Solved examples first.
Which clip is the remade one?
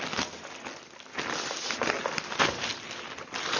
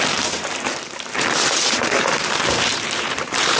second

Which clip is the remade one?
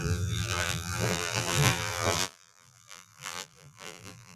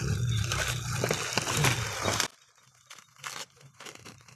first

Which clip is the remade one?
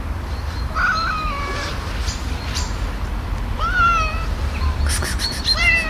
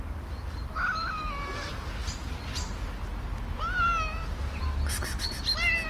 first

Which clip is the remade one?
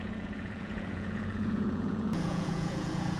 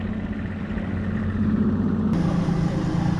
first